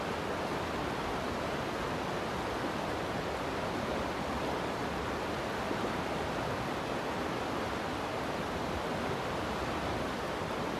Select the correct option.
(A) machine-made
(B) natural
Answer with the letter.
B